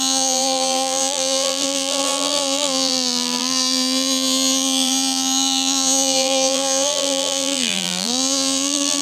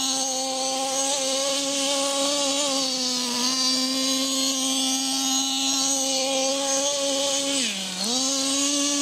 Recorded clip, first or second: second